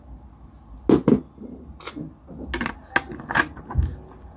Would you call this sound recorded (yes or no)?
yes